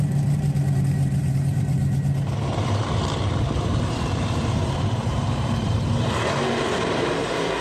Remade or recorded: remade